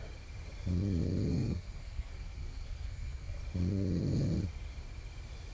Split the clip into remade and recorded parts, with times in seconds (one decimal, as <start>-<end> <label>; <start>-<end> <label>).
0.0-1.3 recorded; 1.3-3.4 remade; 3.4-5.5 recorded